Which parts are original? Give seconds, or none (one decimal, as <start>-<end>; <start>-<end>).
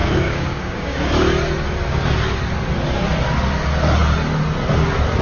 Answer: 1.1-5.2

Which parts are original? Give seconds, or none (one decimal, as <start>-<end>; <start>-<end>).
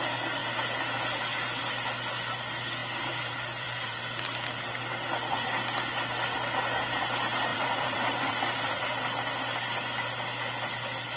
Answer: 0.0-2.8; 4.0-7.5; 8.8-11.2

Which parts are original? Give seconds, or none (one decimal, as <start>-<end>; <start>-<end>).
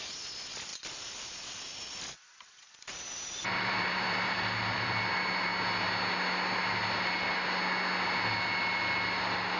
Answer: 0.0-0.7; 5.1-9.6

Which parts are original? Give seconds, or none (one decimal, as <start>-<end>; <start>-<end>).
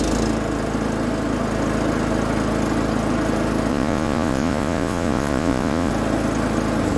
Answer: 0.0-3.7; 5.9-7.0